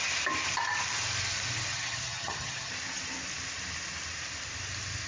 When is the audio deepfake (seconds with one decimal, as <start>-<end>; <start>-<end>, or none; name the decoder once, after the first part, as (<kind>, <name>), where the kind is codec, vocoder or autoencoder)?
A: 1.7-2.7 (vocoder, HiFi-GAN)